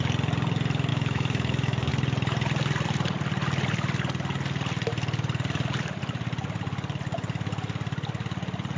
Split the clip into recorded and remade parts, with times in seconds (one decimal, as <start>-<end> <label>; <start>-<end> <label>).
0.0-0.9 recorded; 0.9-1.9 remade; 1.9-8.8 recorded